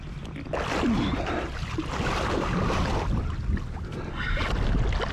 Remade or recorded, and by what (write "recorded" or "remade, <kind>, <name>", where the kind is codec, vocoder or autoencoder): recorded